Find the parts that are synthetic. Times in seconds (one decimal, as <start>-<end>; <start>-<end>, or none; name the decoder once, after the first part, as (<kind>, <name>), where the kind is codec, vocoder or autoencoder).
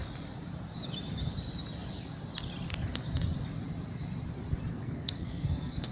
4.7-5.9 (codec, SNAC)